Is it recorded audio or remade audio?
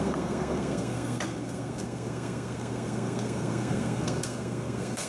remade